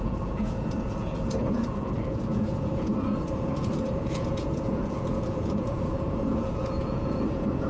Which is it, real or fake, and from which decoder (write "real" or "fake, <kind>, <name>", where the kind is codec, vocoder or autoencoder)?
fake, vocoder, Vocos